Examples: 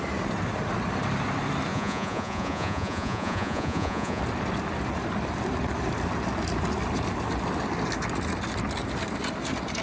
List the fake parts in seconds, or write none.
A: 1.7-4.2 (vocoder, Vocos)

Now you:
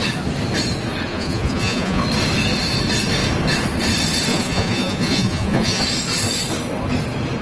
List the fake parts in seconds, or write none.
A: 1.1-2.0 (vocoder, Vocos); 4.3-5.8

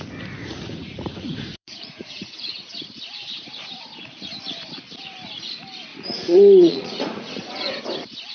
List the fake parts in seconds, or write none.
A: 0.4-2.5 (vocoder, Vocos); 5.9-7.8

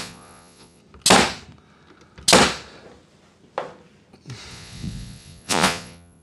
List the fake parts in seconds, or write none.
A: 0.0-0.8 (vocoder, Vocos); 4.5-6.2

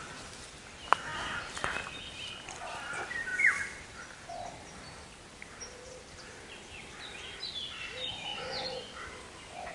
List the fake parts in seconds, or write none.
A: 8.3-9.0 (vocoder, Vocos)

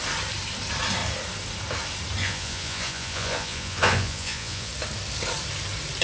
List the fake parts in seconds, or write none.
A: 2.2-4.7 (vocoder, Vocos)